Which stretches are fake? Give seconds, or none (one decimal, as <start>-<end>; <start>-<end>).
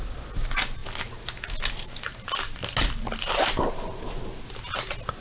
none